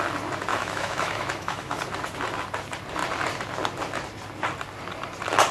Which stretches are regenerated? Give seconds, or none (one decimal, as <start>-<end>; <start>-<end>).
0.5-1.8